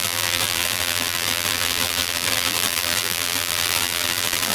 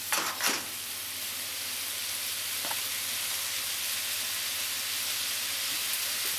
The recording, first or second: second